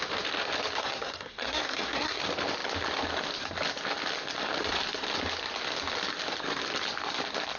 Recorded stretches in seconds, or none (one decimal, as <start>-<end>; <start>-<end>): 0.0-0.8; 2.2-7.6